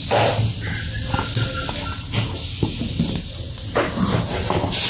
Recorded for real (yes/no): yes